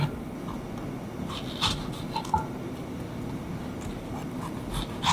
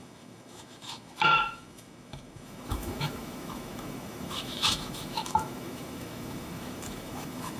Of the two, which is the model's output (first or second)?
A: second